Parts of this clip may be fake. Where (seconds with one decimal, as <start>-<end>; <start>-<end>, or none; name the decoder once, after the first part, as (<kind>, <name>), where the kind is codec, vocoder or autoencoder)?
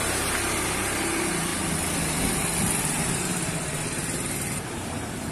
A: 0.0-1.5 (vocoder, BigVGAN v2); 2.8-5.3